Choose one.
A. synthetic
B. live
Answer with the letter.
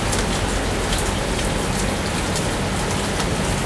B